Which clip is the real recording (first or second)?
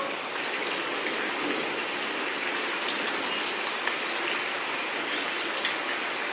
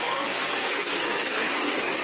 first